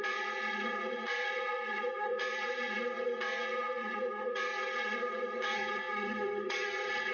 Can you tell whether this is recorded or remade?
remade